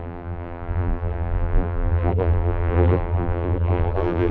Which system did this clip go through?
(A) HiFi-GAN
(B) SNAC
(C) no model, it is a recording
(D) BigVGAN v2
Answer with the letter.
D